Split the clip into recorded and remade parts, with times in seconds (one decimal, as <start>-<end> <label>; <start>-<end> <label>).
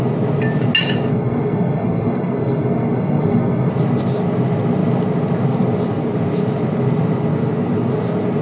0.0-1.1 recorded; 1.1-3.7 remade; 3.7-8.4 recorded